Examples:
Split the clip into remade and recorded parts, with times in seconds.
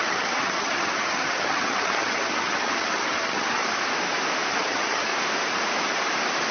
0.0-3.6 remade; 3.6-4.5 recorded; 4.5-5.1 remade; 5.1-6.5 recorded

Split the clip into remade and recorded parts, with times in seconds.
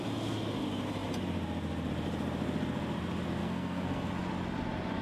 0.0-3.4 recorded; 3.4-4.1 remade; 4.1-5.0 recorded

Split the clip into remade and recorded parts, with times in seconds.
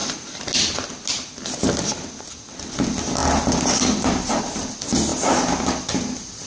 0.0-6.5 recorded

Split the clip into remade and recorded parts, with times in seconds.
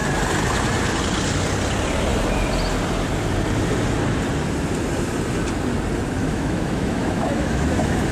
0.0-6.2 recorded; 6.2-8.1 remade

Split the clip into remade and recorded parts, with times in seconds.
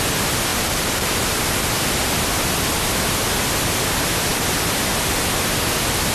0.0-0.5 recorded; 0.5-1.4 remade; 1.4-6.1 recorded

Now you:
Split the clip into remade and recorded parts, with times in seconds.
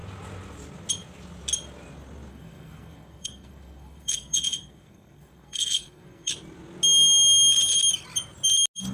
0.0-2.3 recorded; 2.3-6.3 remade; 6.3-8.9 recorded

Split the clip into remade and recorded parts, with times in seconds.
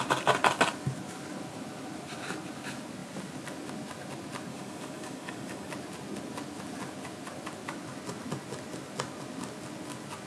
0.0-4.5 recorded; 4.5-5.7 remade; 5.7-10.3 recorded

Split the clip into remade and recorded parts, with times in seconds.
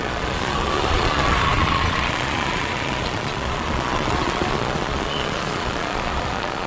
0.0-6.7 remade